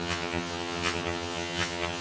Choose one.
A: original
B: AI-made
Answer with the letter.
B